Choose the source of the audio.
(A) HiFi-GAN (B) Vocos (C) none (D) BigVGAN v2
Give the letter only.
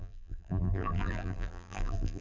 D